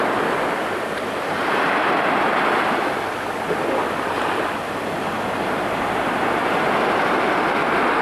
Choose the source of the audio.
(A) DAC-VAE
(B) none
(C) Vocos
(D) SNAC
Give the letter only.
B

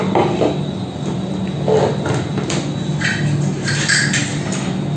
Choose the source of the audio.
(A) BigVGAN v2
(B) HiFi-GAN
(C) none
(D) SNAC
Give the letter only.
C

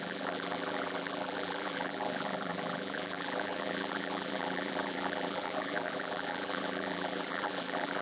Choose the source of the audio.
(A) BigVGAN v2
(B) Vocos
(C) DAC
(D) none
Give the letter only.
A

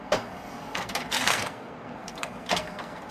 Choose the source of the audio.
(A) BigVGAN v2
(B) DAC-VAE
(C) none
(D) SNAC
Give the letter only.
D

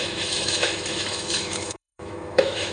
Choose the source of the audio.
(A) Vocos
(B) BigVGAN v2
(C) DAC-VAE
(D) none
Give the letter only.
C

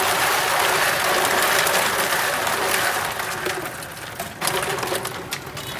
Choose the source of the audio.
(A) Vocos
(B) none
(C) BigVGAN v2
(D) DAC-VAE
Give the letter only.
B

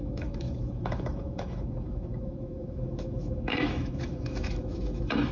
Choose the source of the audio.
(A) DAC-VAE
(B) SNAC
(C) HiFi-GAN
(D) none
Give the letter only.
A